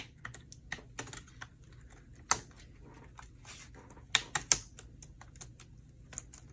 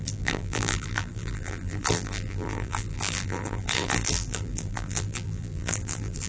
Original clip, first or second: first